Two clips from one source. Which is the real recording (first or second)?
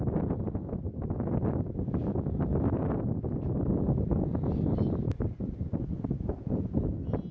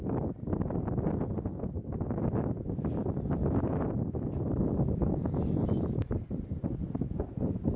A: first